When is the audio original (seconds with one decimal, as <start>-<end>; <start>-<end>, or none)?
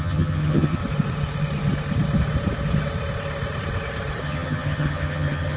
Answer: 0.8-4.2